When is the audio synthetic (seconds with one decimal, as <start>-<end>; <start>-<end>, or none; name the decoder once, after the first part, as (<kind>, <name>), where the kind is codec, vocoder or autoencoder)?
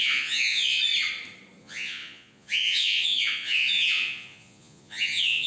0.0-0.8 (vocoder, Vocos); 1.6-5.5